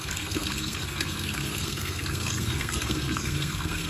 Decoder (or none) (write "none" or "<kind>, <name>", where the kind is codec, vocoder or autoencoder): codec, SNAC